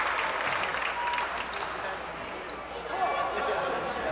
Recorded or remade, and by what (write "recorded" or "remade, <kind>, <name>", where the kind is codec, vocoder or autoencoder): recorded